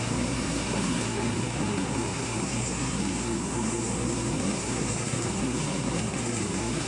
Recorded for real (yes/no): no